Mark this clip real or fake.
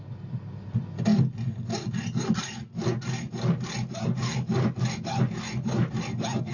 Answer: real